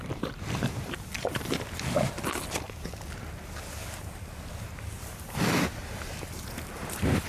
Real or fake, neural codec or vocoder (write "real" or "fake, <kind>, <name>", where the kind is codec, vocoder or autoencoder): real